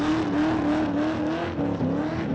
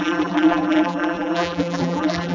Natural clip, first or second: first